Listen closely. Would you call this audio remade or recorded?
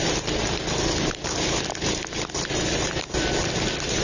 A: recorded